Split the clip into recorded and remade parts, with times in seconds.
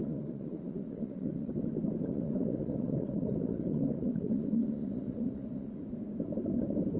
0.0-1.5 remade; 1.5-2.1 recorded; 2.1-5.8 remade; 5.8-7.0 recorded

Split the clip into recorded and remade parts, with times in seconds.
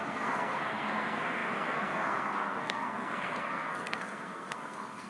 0.0-5.1 remade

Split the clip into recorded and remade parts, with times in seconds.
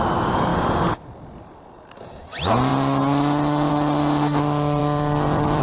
0.0-4.8 recorded; 4.8-5.6 remade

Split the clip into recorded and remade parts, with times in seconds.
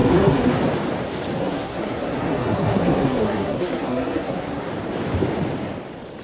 0.0-0.6 remade; 0.6-1.4 recorded; 1.4-4.7 remade; 4.7-6.2 recorded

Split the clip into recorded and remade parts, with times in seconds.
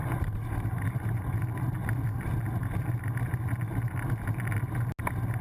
0.0-5.4 recorded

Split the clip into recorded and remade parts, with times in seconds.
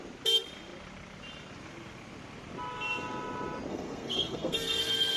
0.0-3.7 recorded; 3.7-5.2 remade